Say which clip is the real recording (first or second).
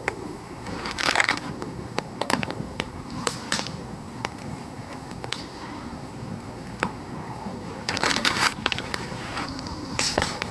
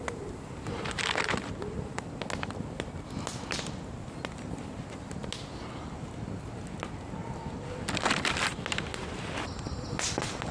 second